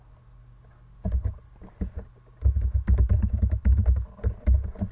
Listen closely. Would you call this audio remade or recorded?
recorded